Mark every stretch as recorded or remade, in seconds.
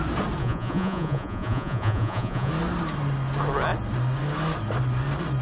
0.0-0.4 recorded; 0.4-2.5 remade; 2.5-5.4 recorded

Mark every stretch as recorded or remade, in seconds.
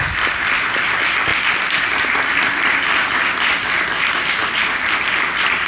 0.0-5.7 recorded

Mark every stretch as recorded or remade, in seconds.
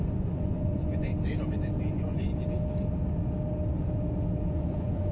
0.0-1.1 remade; 1.1-1.9 recorded; 1.9-2.3 remade; 2.3-4.4 recorded; 4.4-5.1 remade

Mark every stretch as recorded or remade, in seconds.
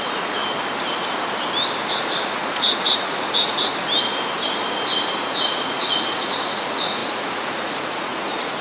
0.0-0.4 remade; 0.4-1.8 recorded; 1.8-3.7 remade; 3.7-5.4 recorded; 5.4-8.6 remade